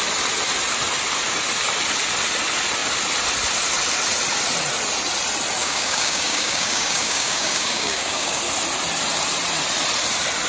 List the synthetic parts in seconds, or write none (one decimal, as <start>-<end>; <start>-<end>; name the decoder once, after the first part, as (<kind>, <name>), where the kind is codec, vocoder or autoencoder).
5.6-8.4 (codec, DAC)